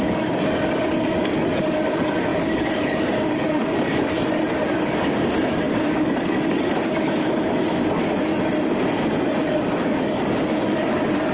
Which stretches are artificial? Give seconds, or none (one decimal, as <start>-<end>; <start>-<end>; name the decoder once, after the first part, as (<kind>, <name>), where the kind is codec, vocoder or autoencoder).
0.0-8.3 (codec, DAC); 9.4-11.3